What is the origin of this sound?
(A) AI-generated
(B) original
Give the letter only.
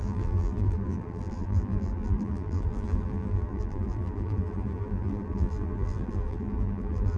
A